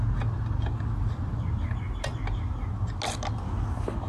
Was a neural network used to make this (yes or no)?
no